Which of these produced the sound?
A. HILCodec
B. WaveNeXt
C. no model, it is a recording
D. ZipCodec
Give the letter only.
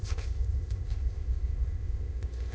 D